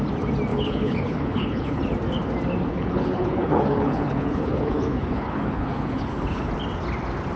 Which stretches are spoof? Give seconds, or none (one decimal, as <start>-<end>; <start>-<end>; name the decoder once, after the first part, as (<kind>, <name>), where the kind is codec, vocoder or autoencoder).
0.5-1.8 (codec, HILCodec); 2.7-6.5